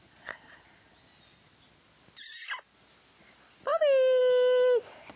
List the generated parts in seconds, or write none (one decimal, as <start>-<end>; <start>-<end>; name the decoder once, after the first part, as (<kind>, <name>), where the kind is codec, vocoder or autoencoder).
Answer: none